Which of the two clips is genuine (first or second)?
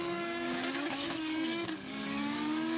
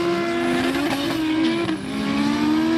second